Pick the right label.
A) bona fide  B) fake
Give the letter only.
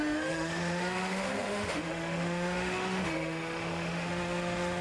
B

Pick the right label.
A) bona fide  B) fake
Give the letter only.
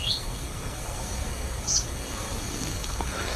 B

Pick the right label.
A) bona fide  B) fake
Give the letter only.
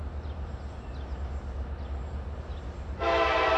A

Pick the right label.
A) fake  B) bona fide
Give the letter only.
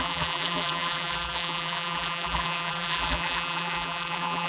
A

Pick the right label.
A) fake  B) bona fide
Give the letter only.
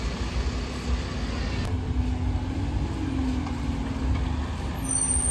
B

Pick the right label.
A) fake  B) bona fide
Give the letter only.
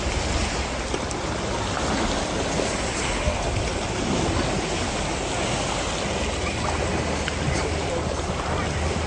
B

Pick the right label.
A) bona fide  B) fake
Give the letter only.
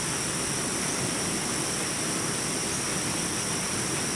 A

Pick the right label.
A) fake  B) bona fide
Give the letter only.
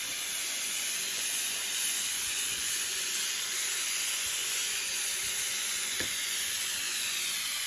A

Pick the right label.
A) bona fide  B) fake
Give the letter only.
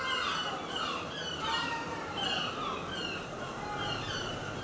B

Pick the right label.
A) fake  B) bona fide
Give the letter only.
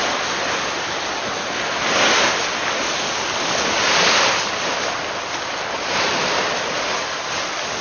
B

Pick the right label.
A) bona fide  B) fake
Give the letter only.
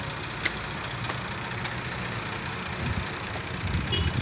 A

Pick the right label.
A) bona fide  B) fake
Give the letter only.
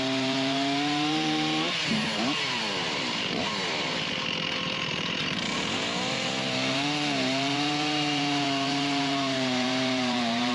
B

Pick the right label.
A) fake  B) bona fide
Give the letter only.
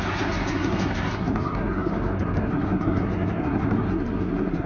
A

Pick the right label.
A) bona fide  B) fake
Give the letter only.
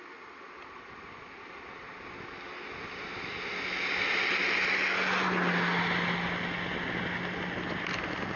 A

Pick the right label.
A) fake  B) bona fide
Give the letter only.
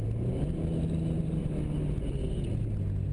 B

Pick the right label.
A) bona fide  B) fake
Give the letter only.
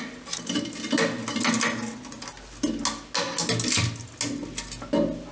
A